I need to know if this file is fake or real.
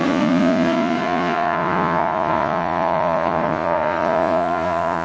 fake